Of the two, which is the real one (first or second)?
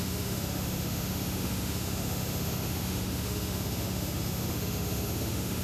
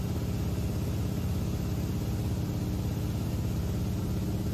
second